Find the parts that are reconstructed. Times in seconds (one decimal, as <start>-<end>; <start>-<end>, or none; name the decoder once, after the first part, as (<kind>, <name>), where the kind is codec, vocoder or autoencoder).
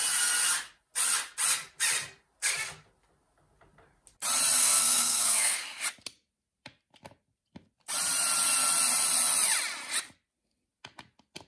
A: 4.6-5.8 (codec, SNAC)